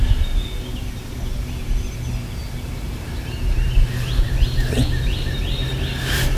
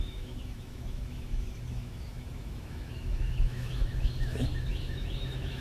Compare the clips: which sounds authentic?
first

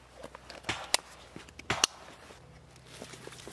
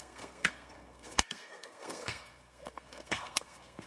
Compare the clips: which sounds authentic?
first